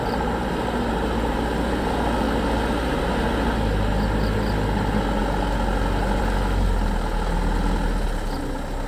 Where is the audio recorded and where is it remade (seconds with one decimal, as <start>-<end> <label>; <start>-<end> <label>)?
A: 0.0-8.9 recorded